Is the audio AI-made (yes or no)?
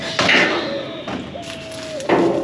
no